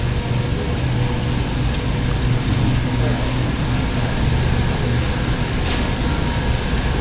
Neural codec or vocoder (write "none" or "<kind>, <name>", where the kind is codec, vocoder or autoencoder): none